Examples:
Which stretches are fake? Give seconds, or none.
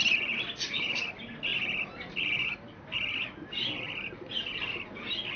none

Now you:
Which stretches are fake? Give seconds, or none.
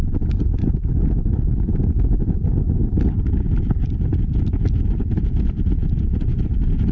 none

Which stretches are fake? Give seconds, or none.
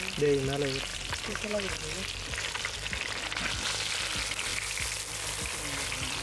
0.9-1.7 (vocoder, BigVGAN v2)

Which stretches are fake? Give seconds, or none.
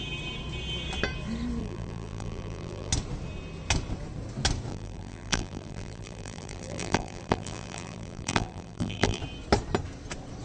1.6-2.9 (vocoder, BigVGAN v2); 4.7-9.2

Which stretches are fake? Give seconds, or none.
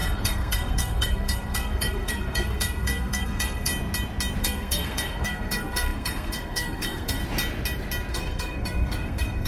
0.0-3.7 (codec, SNAC); 4.4-7.2; 8.1-9.5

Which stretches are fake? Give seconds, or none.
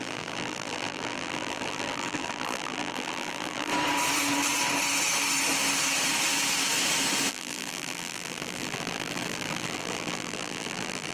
0.0-3.7 (vocoder, BigVGAN v2); 7.3-11.1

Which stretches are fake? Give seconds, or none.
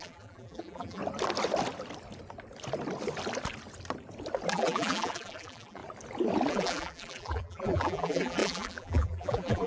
0.0-1.0 (vocoder, BigVGAN v2); 4.5-5.8; 6.5-9.7